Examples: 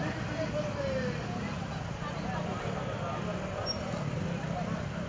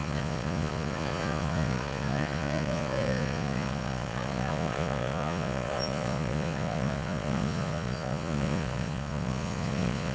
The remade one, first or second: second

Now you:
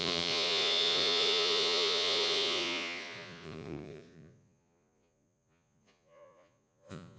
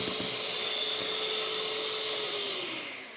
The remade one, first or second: first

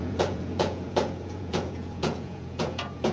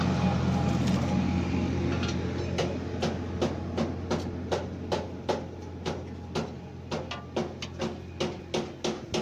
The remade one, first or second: first